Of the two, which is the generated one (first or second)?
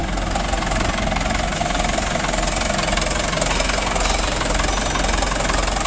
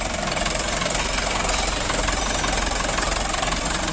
second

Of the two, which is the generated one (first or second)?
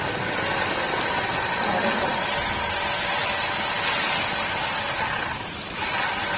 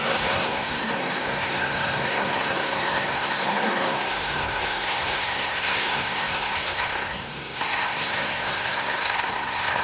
second